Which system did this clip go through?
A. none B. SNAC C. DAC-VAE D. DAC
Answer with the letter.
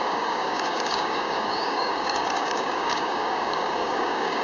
D